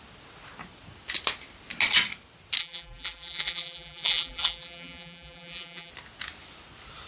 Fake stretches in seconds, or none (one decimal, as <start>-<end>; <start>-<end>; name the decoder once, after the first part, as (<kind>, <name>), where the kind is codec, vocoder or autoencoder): 2.6-5.9 (vocoder, BigVGAN v2)